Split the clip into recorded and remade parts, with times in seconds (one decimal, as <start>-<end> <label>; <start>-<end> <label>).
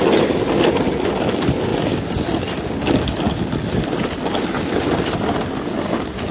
0.0-6.3 recorded